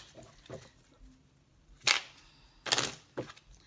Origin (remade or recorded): recorded